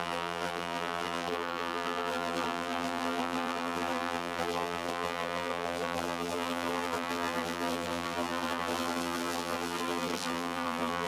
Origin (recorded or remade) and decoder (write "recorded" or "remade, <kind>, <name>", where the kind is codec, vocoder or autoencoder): remade, vocoder, BigVGAN v2